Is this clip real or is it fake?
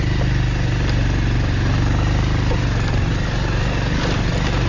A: real